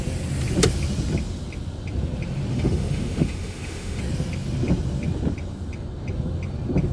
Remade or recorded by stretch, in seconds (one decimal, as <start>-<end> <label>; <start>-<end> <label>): 0.0-2.5 recorded; 2.5-4.0 remade; 4.0-6.9 recorded